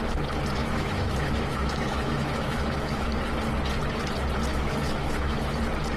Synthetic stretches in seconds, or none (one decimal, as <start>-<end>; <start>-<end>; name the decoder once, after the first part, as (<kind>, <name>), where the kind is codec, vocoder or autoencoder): 0.6-3.2 (autoencoder, DAC-VAE); 4.5-5.6